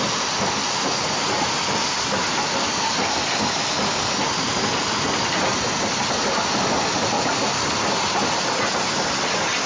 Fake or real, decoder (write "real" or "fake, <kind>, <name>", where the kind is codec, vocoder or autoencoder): real